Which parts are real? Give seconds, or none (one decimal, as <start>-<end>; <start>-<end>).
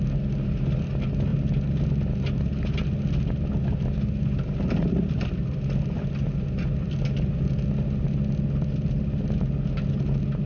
0.0-10.5